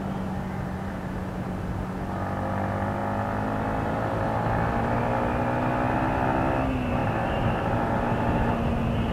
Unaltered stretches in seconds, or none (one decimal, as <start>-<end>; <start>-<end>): 0.0-7.0; 8.5-9.1